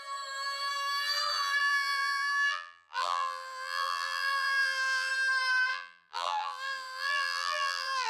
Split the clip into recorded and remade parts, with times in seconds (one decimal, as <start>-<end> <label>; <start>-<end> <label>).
0.0-1.6 recorded; 1.6-5.1 remade; 5.1-5.7 recorded; 5.7-8.1 remade